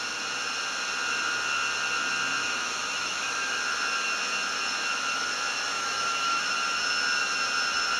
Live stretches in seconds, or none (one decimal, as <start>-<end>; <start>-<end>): 0.0-2.4; 3.6-5.7; 6.4-8.0